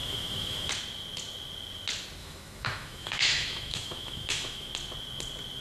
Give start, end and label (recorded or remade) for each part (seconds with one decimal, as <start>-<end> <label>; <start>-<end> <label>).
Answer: 0.0-0.7 remade; 0.7-2.2 recorded; 2.2-4.7 remade; 4.7-5.6 recorded